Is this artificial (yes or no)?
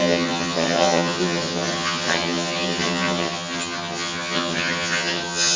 yes